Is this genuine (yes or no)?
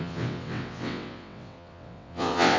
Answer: no